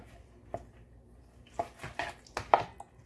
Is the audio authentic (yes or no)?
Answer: yes